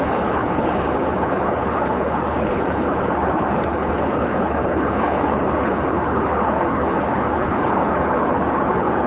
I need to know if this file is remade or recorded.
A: remade